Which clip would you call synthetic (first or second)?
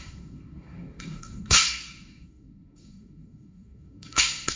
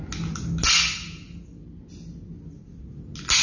first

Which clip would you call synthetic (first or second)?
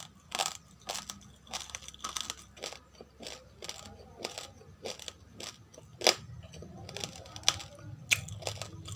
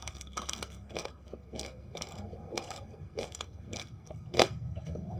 second